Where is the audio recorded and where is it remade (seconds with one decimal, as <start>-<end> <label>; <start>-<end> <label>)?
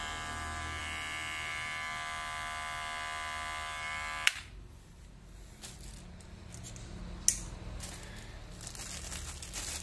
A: 0.0-9.8 recorded